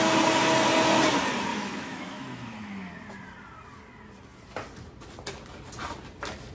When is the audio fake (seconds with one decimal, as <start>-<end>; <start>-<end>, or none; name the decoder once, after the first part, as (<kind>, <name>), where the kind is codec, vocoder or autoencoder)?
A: 1.5-2.9 (autoencoder, DAC-VAE)